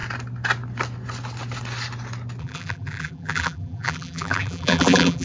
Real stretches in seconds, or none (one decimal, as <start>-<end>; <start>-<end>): 0.0-2.4